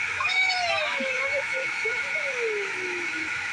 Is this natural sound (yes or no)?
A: no